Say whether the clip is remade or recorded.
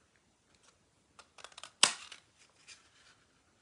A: recorded